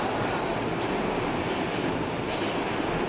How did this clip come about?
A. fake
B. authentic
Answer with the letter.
B